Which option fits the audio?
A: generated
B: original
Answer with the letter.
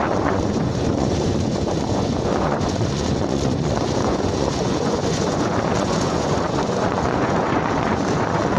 A